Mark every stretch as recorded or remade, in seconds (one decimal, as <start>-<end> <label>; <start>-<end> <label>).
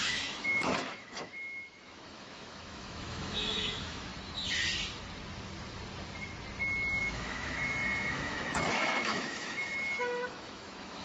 0.0-4.1 remade; 4.1-7.0 recorded; 7.0-11.0 remade